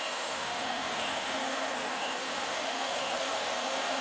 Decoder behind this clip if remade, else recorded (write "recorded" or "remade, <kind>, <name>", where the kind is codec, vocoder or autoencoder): remade, autoencoder, DAC-VAE